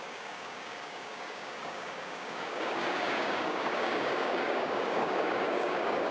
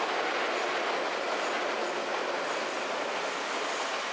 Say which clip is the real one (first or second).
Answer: second